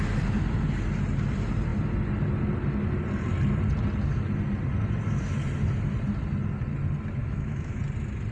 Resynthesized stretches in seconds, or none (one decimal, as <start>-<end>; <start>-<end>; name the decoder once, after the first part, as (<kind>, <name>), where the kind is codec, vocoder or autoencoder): 7.2-7.8 (autoencoder, DAC-VAE)